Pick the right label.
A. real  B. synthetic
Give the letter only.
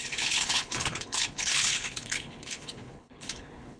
B